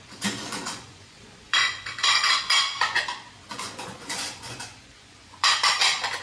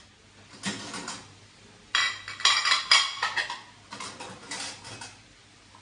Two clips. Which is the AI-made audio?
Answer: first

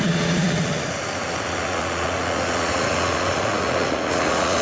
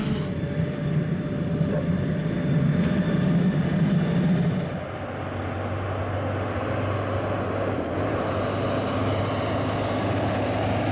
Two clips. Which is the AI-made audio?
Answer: first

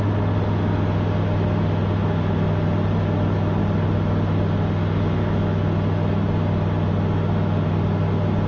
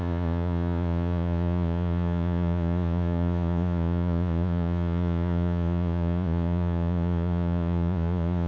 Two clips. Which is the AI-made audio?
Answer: second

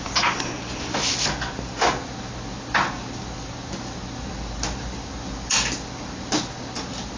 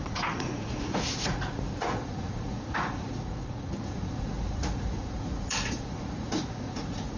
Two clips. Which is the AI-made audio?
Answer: second